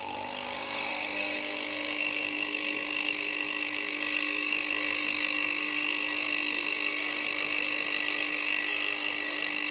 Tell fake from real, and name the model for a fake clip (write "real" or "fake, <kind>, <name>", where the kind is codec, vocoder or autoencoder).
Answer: fake, codec, SNAC